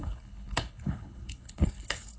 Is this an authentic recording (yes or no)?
no